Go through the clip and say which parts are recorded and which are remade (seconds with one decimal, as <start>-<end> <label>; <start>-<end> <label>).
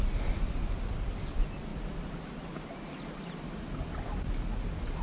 0.0-5.0 recorded